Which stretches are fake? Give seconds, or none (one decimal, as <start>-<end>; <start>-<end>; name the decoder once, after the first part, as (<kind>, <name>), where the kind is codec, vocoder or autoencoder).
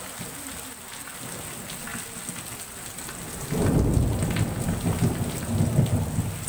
none